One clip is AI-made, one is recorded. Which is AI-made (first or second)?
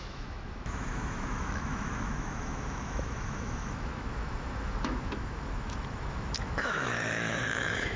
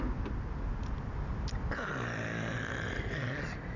first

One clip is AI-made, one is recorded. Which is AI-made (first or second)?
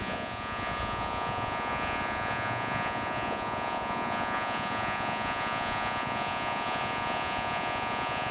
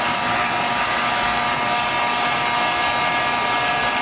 first